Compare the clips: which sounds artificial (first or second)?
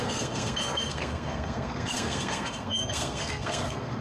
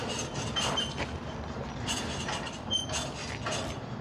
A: first